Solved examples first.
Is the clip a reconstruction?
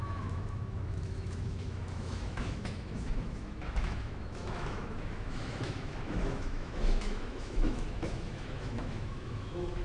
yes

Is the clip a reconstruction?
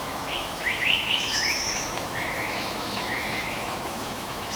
yes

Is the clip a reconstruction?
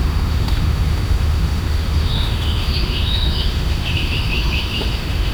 yes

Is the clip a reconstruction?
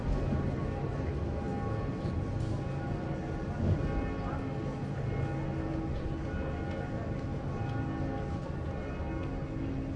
no